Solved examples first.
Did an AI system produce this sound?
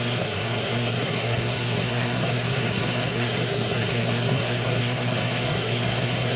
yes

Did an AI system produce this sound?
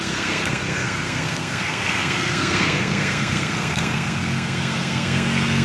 yes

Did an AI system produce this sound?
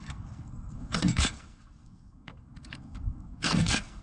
yes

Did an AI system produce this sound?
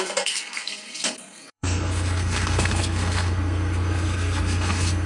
yes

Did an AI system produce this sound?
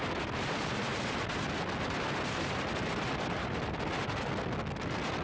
no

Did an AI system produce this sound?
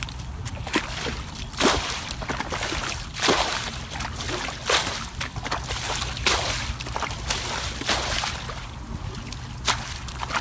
no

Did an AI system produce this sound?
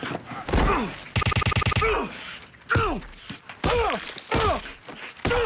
no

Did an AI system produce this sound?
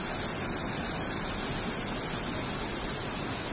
no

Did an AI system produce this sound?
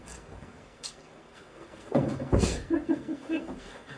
yes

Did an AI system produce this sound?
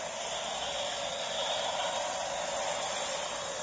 no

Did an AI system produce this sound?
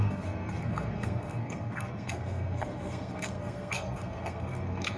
yes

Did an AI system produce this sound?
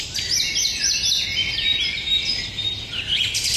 no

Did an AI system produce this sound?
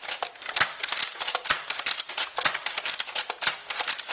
no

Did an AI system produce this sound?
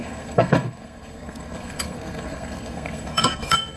yes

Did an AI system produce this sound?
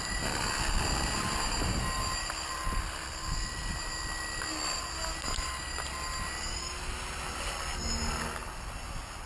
no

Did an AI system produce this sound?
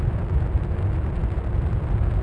no